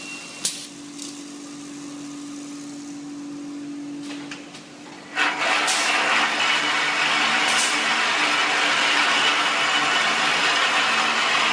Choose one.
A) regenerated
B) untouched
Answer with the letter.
B